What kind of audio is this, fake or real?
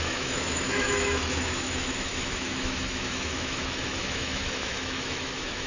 fake